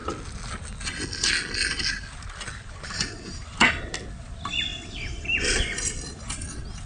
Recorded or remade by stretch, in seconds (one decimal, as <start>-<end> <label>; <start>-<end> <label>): 0.0-6.9 recorded